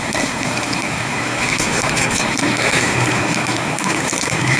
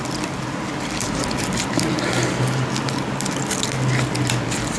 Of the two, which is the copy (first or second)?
first